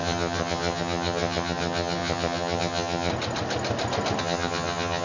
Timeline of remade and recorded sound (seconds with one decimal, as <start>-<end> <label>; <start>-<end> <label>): 0.0-3.1 remade; 3.1-4.2 recorded; 4.2-5.0 remade